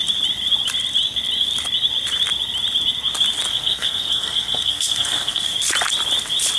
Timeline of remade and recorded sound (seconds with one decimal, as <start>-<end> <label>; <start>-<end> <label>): 0.0-3.5 recorded; 3.5-5.5 remade; 5.5-6.6 recorded